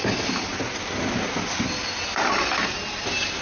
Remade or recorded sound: recorded